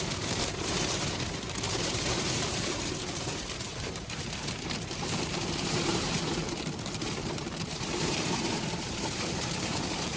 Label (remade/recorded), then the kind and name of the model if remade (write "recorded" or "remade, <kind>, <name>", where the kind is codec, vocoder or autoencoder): remade, vocoder, BigVGAN v2